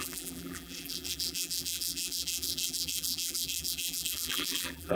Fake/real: fake